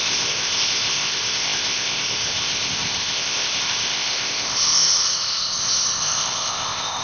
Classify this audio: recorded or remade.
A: remade